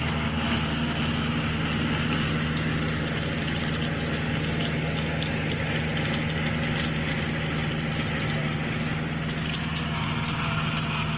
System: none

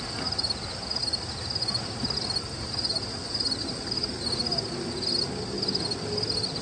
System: none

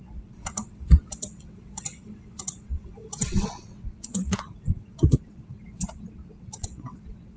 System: vocoder, WaveNeXt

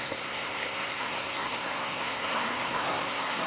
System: codec, SNAC